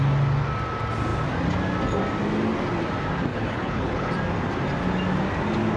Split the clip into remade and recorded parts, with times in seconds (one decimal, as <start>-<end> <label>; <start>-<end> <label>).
0.0-3.3 recorded; 3.3-4.1 remade; 4.1-5.8 recorded